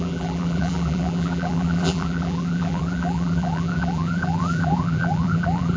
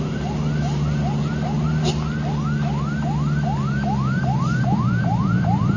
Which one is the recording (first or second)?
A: second